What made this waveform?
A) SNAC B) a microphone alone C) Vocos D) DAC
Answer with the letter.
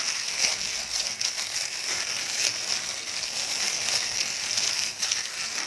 A